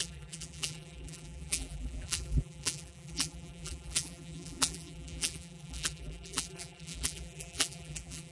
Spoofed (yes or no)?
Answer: yes